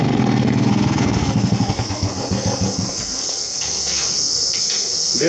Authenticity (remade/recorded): remade